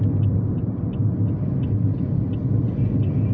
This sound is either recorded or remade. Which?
recorded